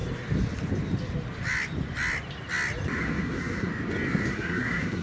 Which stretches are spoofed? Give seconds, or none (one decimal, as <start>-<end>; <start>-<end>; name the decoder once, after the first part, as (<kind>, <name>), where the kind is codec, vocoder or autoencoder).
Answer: 3.0-3.7 (codec, SNAC); 4.3-5.0